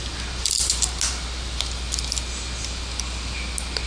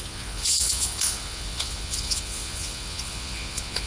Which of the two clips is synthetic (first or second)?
second